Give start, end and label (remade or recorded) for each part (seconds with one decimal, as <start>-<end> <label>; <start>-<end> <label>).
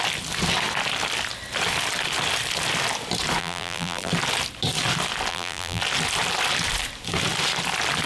0.0-3.4 recorded; 3.4-4.1 remade; 4.1-5.3 recorded; 5.3-5.8 remade; 5.8-8.1 recorded